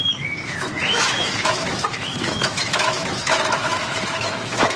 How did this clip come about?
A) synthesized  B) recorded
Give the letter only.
A